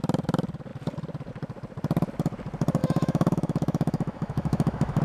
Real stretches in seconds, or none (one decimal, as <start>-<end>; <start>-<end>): 0.0-2.8